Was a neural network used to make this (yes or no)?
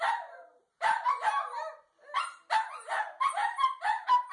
yes